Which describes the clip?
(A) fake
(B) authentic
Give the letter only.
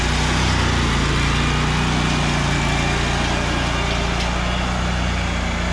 B